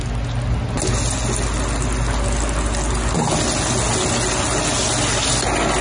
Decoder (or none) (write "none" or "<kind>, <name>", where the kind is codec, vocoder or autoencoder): none